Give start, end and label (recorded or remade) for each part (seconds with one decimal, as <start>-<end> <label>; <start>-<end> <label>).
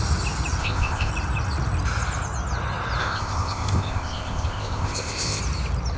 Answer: 0.0-0.6 recorded; 0.6-1.1 remade; 1.1-3.0 recorded; 3.0-5.4 remade; 5.4-6.0 recorded